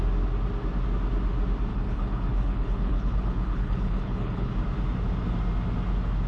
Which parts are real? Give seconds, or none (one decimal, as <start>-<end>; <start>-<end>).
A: 0.0-1.7; 4.5-6.3